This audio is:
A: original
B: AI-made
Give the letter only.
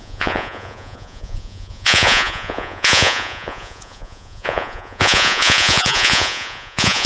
B